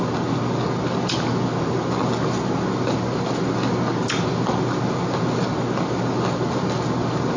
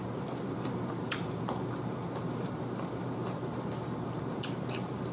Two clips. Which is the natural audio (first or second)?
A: first